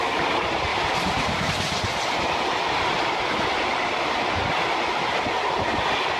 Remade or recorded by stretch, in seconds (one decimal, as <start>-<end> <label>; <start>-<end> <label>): 0.0-6.2 recorded